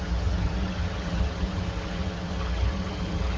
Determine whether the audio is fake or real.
fake